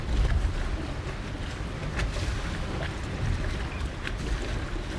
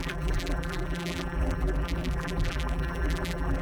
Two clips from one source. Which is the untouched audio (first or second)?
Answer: first